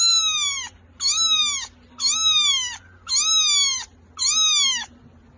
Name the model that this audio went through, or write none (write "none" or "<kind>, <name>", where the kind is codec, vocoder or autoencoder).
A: none